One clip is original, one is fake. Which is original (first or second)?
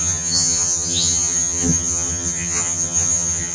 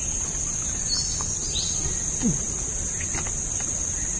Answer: second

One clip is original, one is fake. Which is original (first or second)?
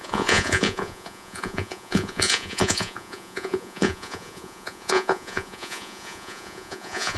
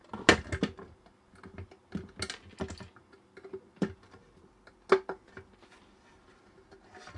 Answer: second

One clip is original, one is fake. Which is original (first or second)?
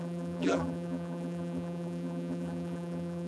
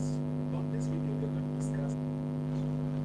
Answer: second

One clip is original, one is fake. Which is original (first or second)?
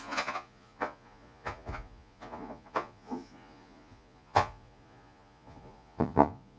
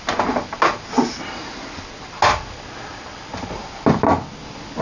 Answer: second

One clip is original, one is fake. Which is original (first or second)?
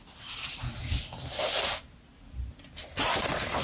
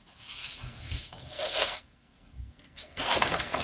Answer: first